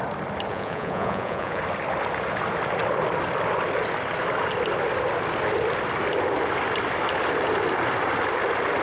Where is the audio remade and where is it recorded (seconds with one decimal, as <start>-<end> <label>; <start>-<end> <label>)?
0.0-0.5 recorded; 0.5-1.6 remade; 1.6-8.8 recorded